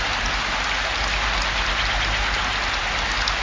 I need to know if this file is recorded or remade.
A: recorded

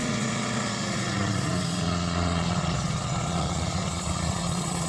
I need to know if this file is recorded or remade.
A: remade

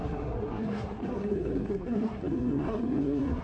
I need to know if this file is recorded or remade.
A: remade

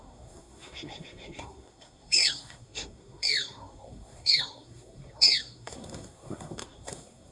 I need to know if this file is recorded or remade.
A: remade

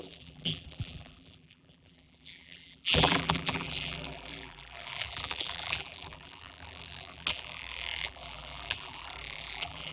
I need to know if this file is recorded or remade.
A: remade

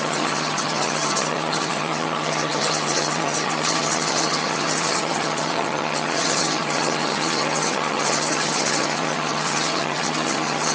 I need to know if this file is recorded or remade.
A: remade